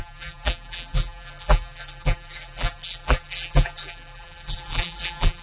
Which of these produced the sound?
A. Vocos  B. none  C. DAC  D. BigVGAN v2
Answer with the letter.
D